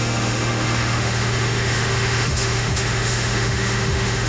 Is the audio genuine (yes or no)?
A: no